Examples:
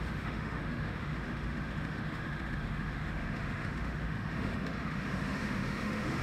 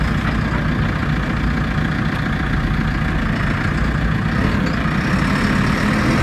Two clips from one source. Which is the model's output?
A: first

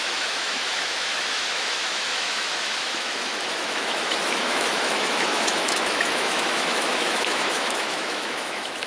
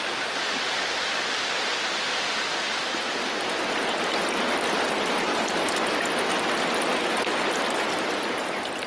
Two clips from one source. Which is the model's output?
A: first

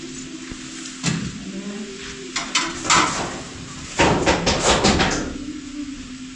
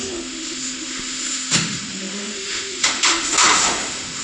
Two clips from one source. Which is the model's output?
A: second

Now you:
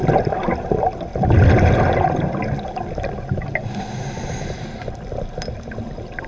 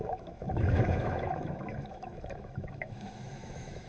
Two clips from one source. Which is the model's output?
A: second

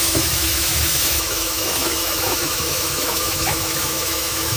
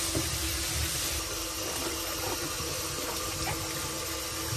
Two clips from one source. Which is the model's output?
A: first